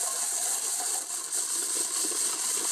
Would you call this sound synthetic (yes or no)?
no